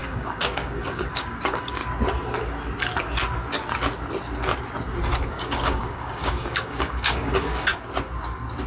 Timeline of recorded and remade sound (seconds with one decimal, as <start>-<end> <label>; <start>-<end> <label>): 0.0-1.8 remade; 1.8-5.3 recorded; 5.3-7.7 remade; 7.7-8.7 recorded